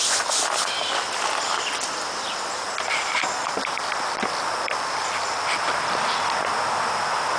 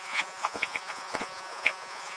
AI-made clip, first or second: second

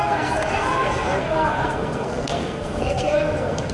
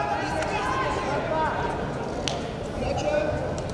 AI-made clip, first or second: first